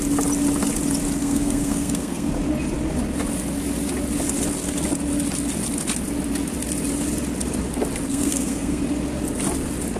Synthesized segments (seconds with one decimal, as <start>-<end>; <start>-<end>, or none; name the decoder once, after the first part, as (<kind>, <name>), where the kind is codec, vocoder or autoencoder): 1.2-2.3 (codec, SNAC); 8.1-8.8